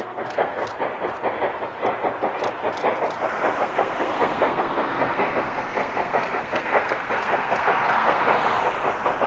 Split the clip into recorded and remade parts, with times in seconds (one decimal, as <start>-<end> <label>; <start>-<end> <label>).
0.0-0.6 remade; 0.6-3.6 recorded; 3.6-8.2 remade; 8.2-9.3 recorded